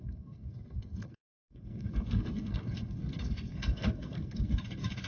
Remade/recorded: remade